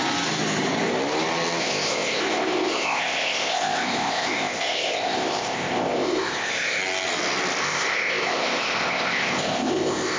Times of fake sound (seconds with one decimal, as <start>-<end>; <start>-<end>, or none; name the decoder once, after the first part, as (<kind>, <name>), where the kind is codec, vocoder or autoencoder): 1.6-6.8 (codec, ZipCodec); 7.6-10.2